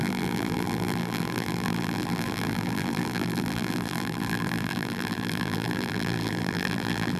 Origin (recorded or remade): remade